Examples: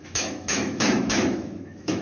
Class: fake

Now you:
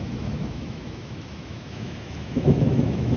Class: fake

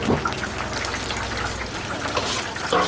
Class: real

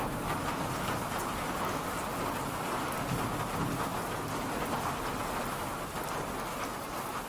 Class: real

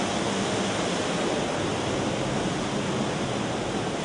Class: real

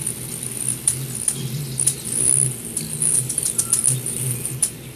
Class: real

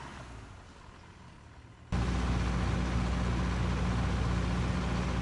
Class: real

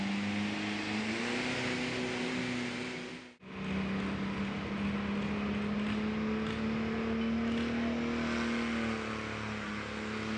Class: real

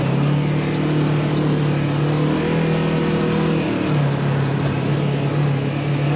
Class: real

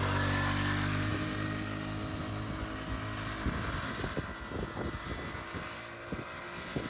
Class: real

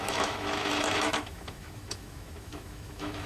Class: fake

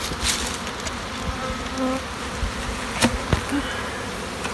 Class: real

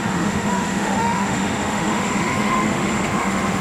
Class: fake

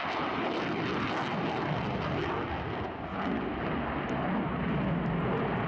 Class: real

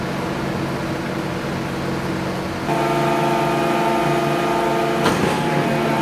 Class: real